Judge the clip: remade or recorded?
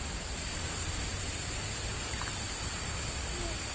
recorded